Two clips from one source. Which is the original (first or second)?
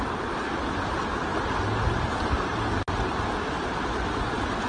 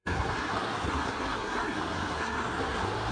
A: first